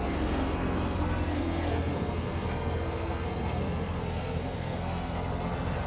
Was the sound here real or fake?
fake